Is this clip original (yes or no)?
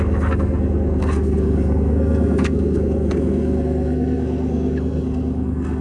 no